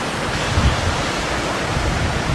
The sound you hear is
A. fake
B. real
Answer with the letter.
B